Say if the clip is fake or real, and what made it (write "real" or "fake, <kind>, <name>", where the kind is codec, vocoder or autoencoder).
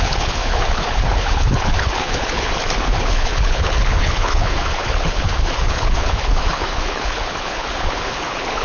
fake, codec, HILCodec